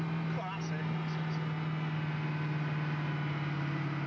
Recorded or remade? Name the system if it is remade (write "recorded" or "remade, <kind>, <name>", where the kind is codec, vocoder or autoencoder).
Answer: recorded